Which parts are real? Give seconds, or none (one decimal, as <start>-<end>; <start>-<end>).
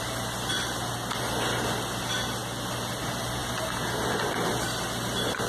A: 0.0-5.5